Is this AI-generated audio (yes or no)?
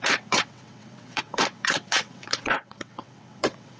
yes